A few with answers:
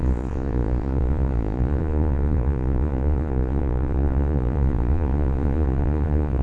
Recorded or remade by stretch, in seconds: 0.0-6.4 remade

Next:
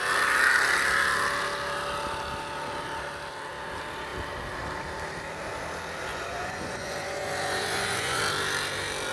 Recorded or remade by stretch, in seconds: 0.0-6.1 recorded; 6.1-8.2 remade; 8.2-9.1 recorded